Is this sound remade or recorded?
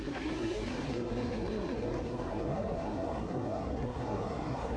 remade